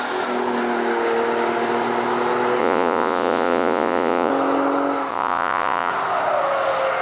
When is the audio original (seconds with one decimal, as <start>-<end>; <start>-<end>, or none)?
0.0-2.6; 4.3-5.1; 5.9-7.0